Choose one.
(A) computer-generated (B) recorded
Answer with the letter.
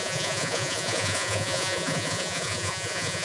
A